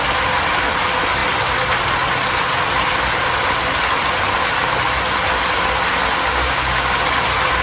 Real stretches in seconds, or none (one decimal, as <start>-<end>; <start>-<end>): 0.0-6.2; 7.0-7.6